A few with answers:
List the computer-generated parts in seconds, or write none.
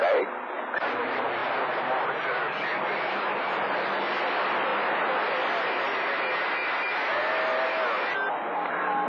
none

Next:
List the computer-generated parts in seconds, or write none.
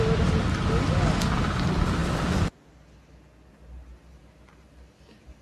none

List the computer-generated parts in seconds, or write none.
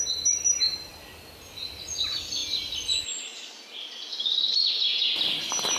none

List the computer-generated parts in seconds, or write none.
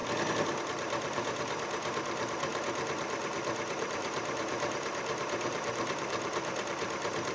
0.6-7.3 (vocoder, BigVGAN v2)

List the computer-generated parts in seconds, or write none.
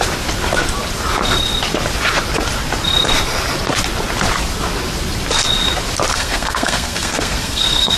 6.1-8.0 (codec, SNAC)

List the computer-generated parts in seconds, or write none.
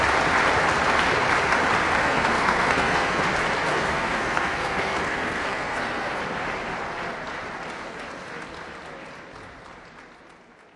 2.0-3.2 (codec, SNAC); 3.7-6.2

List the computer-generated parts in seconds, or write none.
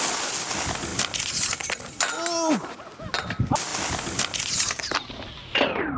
none